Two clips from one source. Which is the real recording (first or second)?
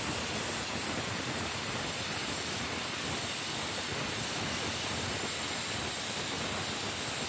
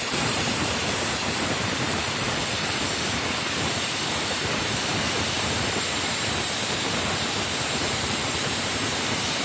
first